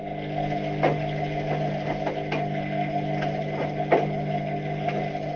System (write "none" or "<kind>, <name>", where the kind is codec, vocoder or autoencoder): none